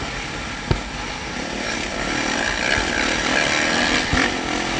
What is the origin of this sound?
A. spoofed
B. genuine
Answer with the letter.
B